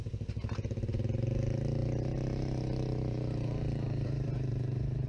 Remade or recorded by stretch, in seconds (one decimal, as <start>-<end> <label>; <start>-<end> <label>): 0.0-1.8 recorded; 1.8-5.1 remade